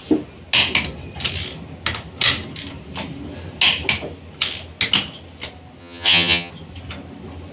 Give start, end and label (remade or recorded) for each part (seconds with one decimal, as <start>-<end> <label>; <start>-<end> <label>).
0.0-5.8 recorded; 5.8-6.5 remade; 6.5-7.5 recorded